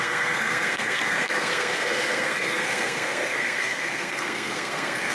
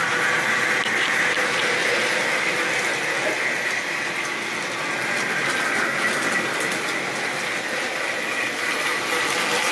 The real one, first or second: second